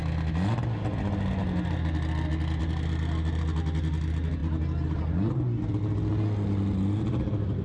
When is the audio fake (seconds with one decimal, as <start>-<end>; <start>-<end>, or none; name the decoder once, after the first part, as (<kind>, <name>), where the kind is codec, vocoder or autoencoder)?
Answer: none